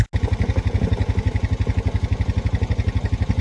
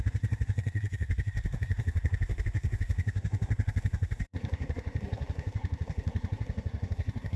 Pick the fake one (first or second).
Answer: second